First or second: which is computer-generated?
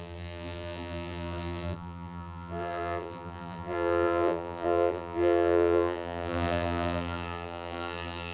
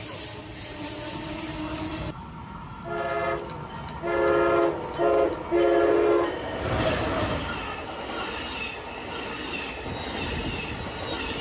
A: first